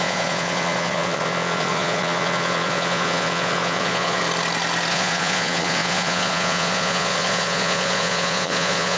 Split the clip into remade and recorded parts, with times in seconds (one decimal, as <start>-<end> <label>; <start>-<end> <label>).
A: 0.0-4.2 remade; 4.2-4.9 recorded; 4.9-9.0 remade